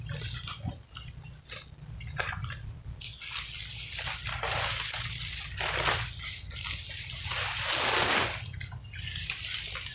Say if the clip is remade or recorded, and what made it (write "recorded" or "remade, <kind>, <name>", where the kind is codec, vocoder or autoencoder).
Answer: recorded